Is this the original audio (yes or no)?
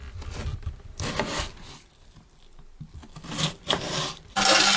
yes